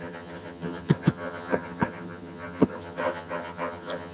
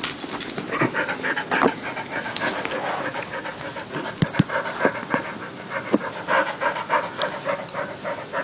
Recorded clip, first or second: second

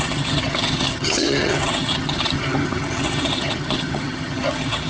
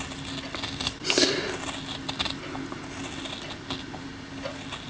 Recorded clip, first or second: second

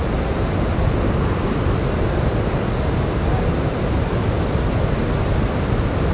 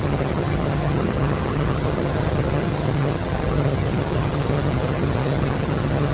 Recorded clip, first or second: first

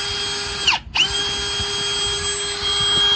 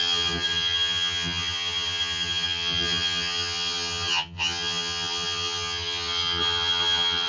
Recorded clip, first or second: first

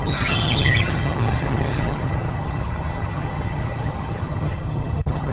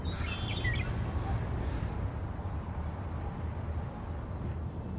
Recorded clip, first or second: second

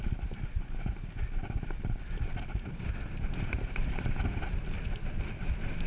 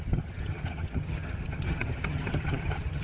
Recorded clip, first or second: first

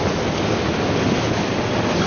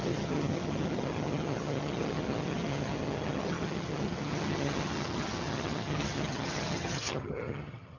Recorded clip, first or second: first